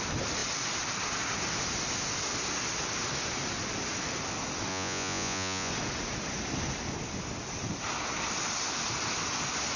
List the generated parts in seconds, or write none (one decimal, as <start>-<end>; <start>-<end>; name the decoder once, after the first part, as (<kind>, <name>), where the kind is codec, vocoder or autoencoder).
4.7-5.7 (vocoder, Vocos)